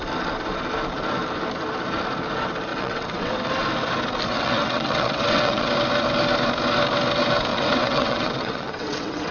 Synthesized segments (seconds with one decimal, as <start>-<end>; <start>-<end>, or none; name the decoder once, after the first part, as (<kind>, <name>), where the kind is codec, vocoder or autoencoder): 2.7-3.3 (vocoder, WaveNeXt); 4.3-5.7; 7.5-9.3